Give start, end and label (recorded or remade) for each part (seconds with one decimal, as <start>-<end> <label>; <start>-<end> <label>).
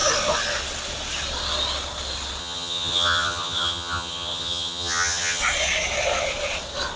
0.0-2.4 recorded; 2.4-5.4 remade; 5.4-7.0 recorded